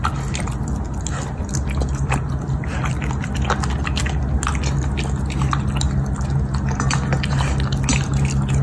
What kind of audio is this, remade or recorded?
recorded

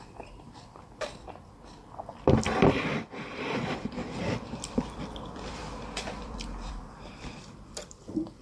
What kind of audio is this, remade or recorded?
remade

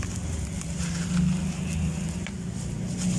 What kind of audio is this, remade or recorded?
recorded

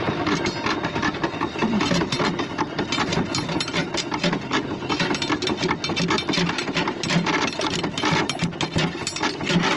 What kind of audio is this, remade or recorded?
recorded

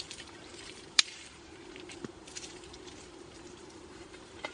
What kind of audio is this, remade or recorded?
remade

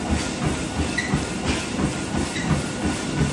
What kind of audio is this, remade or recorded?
recorded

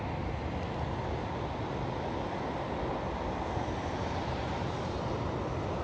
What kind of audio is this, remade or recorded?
recorded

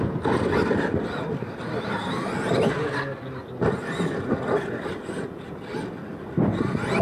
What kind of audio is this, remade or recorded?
recorded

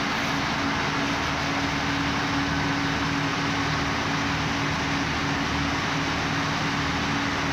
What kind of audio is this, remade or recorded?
recorded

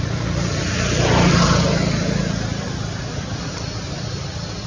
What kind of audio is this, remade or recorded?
recorded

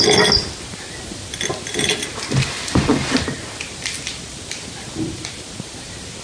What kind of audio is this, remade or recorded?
recorded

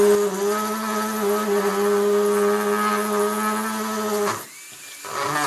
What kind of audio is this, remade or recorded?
recorded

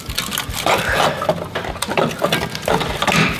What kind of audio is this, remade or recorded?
remade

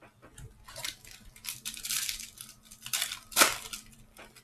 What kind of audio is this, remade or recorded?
remade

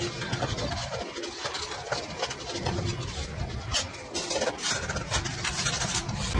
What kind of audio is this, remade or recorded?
remade